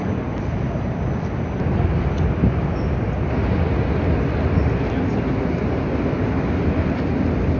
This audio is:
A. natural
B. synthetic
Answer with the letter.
A